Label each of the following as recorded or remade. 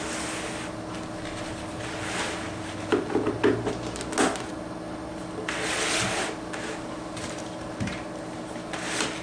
recorded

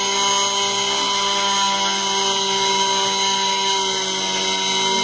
recorded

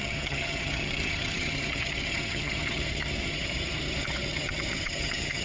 remade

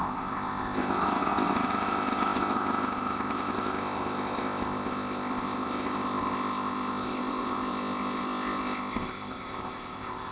remade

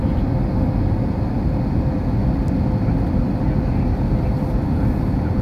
recorded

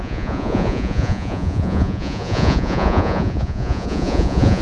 remade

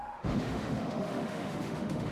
remade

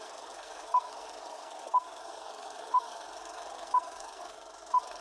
remade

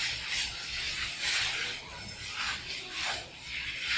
recorded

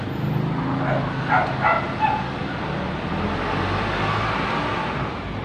recorded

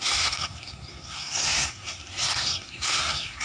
remade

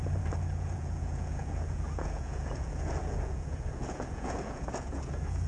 remade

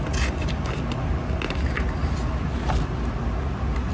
recorded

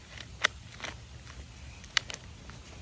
recorded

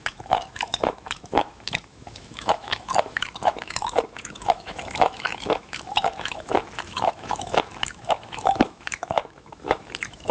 remade